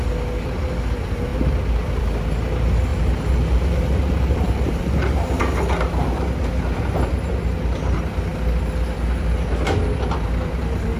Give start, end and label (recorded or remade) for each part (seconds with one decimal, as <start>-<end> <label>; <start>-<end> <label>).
0.0-2.9 recorded; 2.9-5.4 remade; 5.4-11.0 recorded

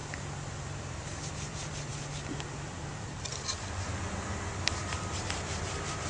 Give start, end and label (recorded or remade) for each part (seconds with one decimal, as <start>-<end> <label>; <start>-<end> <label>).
0.0-0.6 recorded; 0.6-6.1 remade

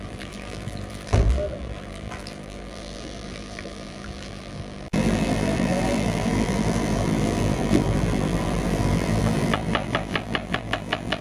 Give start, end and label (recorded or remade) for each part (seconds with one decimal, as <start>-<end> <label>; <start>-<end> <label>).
0.0-11.2 remade

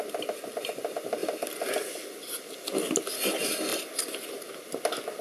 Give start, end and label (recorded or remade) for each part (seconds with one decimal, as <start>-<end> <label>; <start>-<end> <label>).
0.0-5.2 recorded

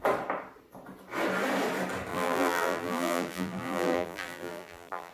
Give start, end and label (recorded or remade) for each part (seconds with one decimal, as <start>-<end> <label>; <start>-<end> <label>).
0.0-2.1 recorded; 2.1-5.1 remade

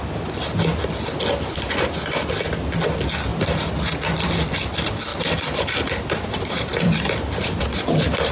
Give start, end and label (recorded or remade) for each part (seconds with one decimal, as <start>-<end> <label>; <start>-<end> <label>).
0.0-3.3 recorded; 3.3-4.6 remade; 4.6-5.1 recorded; 5.1-8.3 remade

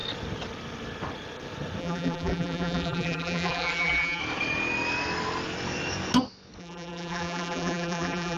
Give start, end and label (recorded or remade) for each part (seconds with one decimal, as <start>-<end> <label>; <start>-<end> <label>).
0.0-1.8 recorded; 1.8-4.2 remade; 4.2-6.6 recorded; 6.6-8.4 remade

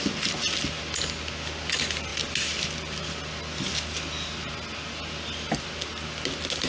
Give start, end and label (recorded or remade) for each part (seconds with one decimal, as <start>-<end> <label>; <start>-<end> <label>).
0.0-6.7 recorded